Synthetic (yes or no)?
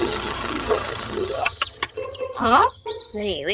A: yes